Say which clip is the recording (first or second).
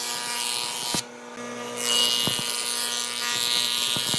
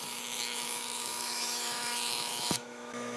first